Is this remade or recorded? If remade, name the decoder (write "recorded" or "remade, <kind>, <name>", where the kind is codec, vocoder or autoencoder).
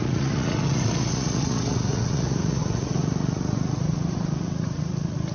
remade, vocoder, Vocos